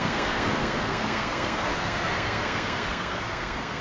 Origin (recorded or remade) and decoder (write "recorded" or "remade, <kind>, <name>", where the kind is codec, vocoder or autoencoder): remade, codec, SNAC